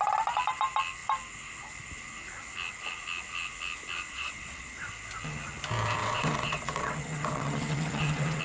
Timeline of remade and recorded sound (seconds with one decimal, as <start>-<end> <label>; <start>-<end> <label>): 0.0-4.1 recorded; 4.1-4.9 remade; 4.9-6.0 recorded; 6.0-8.4 remade